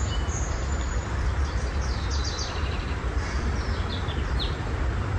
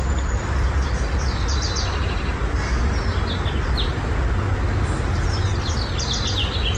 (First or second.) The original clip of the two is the second